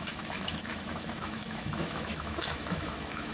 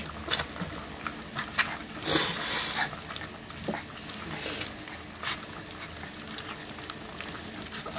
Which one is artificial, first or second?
first